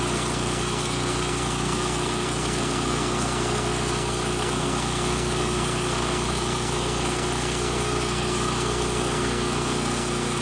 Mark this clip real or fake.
fake